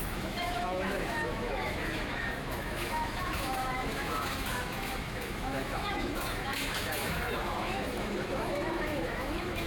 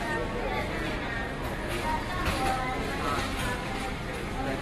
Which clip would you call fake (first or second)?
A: first